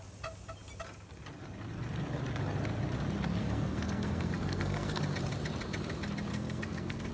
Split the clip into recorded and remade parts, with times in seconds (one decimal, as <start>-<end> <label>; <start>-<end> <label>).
0.0-3.4 recorded; 3.4-5.0 remade; 5.0-6.3 recorded; 6.3-7.1 remade